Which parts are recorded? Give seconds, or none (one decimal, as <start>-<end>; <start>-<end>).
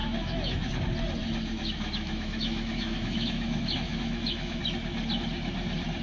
0.7-1.2; 4.6-6.0